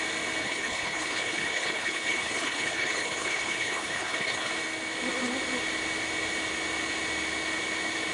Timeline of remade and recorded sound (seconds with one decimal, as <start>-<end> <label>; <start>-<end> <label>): 0.0-0.4 recorded; 0.4-4.5 remade; 4.5-8.1 recorded